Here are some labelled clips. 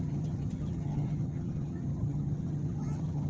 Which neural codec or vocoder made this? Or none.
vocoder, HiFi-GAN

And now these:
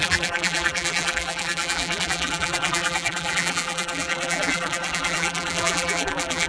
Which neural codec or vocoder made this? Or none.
vocoder, BigVGAN v2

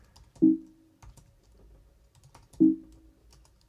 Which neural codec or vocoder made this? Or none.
none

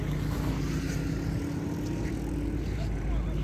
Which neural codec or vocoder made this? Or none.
none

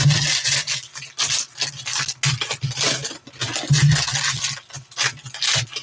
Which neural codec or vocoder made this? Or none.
none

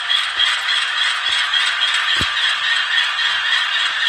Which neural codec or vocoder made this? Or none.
none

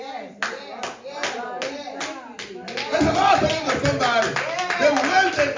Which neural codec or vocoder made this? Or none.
none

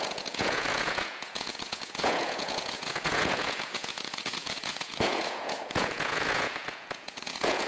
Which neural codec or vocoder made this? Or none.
vocoder, Vocos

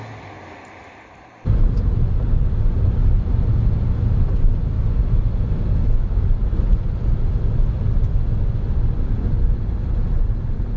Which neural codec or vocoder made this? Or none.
none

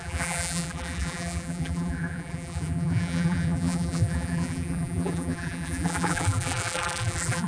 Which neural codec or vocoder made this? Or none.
vocoder, BigVGAN v2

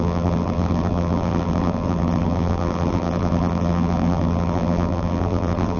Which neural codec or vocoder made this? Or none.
vocoder, BigVGAN v2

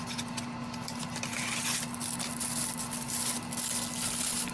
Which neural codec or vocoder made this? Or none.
none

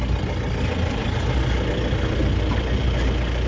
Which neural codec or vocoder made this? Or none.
none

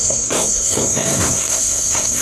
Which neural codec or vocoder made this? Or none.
codec, SNAC